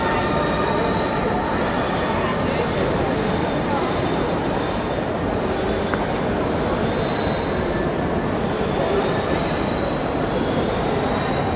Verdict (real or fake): real